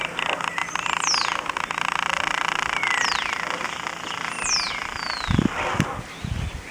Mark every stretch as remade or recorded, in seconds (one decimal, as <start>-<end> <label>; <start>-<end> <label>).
0.0-6.7 recorded